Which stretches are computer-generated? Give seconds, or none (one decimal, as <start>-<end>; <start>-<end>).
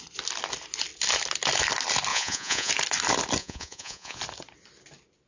2.1-2.7; 3.4-4.2